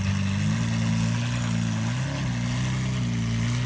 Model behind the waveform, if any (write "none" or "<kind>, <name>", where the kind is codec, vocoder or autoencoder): none